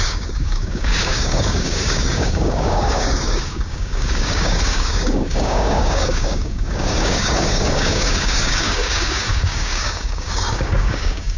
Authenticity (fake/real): fake